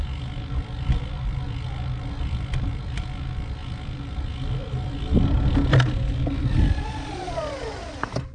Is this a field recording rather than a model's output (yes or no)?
yes